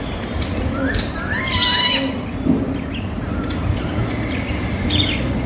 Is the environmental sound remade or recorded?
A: recorded